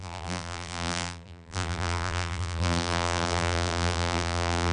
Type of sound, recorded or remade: remade